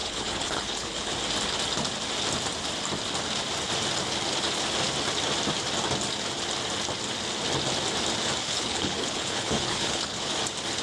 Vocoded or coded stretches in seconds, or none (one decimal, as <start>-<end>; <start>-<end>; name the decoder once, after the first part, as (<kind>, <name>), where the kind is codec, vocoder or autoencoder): 0.0-1.1 (codec, HILCodec); 8.4-10.3